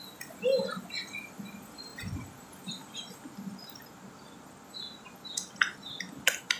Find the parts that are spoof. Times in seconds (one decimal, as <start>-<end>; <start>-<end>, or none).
none